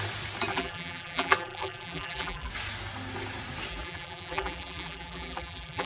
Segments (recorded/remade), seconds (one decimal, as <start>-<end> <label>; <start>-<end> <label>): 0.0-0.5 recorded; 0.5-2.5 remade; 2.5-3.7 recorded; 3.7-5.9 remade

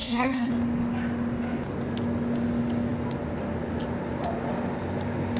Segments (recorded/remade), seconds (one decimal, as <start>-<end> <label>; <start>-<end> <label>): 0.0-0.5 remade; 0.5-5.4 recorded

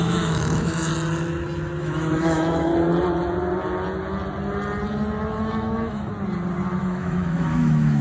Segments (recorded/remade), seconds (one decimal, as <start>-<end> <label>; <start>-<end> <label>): 0.0-0.9 remade; 0.9-1.8 recorded; 1.8-2.7 remade; 2.7-5.4 recorded; 5.4-6.1 remade; 6.1-6.8 recorded; 6.8-8.0 remade